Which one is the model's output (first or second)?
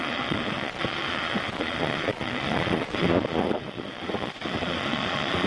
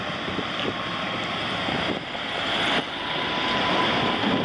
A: first